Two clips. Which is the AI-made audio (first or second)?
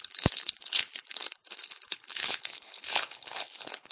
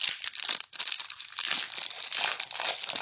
first